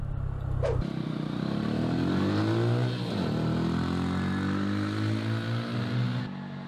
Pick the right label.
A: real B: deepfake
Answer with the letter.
A